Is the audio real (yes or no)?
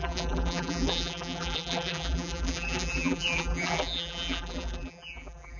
no